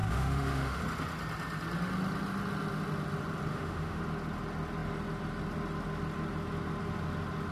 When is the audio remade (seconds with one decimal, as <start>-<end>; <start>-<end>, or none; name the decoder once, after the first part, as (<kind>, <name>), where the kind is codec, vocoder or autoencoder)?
0.0-0.8 (autoencoder, DAC-VAE); 3.5-4.0